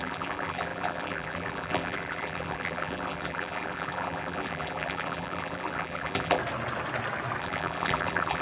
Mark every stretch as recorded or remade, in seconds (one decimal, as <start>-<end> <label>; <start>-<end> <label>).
0.0-6.4 remade; 6.4-7.4 recorded; 7.4-8.4 remade